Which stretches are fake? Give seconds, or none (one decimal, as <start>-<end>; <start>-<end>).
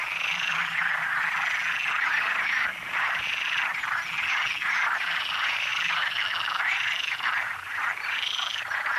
0.0-0.9; 2.0-3.7; 4.5-9.0